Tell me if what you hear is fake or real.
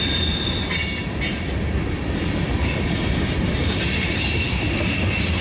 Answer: real